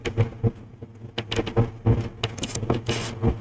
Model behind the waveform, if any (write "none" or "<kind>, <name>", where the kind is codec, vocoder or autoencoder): none